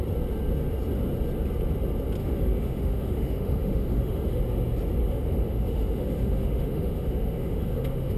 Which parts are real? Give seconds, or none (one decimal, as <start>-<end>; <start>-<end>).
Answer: 0.0-2.2; 4.4-5.0